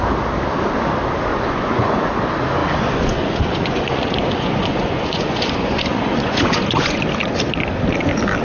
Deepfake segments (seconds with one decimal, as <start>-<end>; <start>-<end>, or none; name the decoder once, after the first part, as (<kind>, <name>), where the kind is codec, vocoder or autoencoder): 1.3-2.1 (vocoder, Vocos); 2.6-7.0

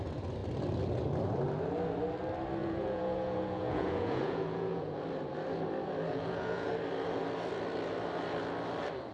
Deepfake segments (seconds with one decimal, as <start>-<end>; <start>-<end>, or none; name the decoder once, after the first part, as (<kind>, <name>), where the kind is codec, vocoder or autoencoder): 2.6-5.0 (vocoder, Vocos); 6.1-6.7

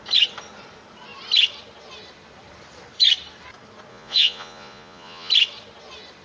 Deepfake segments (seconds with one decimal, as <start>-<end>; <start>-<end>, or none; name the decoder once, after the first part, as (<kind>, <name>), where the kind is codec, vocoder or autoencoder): 3.9-5.3 (vocoder, Vocos)